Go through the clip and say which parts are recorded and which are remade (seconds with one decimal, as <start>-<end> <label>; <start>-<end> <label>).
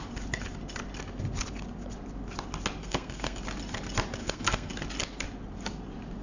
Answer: 0.0-2.8 recorded; 2.8-3.4 remade; 3.4-4.2 recorded; 4.2-4.7 remade; 4.7-6.2 recorded